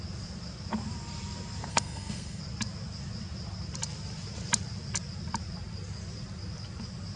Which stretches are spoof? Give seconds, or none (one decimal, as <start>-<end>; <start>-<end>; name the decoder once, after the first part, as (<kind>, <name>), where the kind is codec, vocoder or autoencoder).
1.7-2.4 (codec, SNAC)